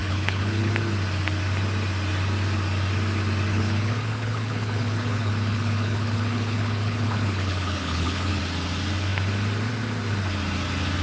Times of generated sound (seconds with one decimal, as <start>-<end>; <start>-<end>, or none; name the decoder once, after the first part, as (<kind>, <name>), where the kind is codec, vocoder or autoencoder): 0.0-0.7 (codec, HILCodec); 3.5-8.4